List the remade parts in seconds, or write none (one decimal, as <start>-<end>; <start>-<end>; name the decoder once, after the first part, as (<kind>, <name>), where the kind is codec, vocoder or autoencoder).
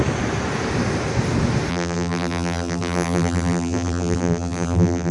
1.7-5.1 (vocoder, BigVGAN v2)